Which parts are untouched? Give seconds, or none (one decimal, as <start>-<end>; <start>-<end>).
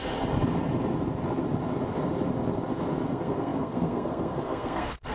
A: 0.0-3.1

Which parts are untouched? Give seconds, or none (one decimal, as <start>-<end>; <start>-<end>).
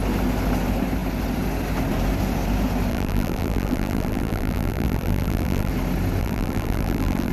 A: 0.0-2.9; 5.7-6.2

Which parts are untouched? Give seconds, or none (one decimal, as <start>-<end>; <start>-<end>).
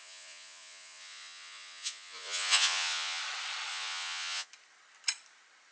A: 3.2-3.7; 4.5-5.7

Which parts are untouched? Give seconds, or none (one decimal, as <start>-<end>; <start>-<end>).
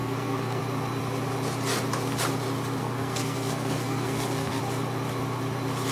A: 0.6-2.8; 4.6-5.9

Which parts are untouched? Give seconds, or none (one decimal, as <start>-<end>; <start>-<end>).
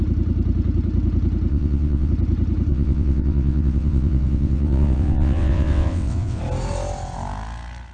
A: 0.0-1.5; 2.1-2.7; 6.4-7.9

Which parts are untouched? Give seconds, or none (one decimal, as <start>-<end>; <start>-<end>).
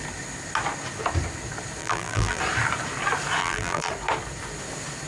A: 0.0-1.8; 2.4-3.4; 3.9-5.1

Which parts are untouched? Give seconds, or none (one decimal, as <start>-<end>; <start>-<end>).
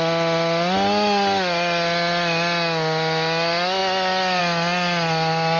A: 0.0-5.6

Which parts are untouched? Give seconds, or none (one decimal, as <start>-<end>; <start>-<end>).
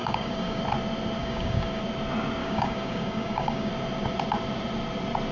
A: 0.6-1.2; 1.8-2.4; 3.7-5.3